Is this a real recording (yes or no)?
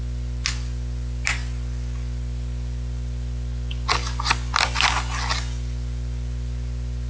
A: yes